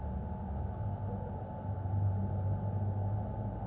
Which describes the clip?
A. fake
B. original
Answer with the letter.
B